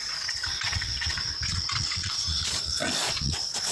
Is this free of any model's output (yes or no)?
no